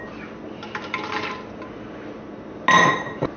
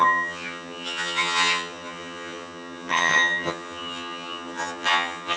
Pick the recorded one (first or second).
first